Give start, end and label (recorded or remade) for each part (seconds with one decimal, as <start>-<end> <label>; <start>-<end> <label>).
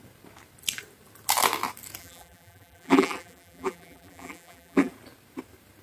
0.0-2.0 recorded; 2.0-4.9 remade; 4.9-5.8 recorded